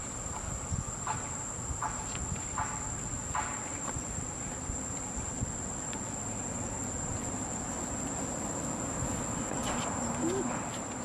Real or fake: real